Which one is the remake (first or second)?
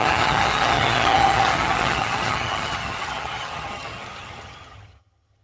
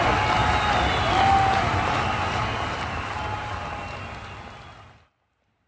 first